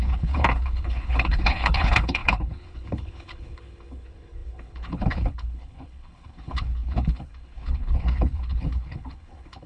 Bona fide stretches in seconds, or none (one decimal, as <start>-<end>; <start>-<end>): none